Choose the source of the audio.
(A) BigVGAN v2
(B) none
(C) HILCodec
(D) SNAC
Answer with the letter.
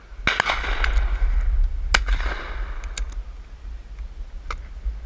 B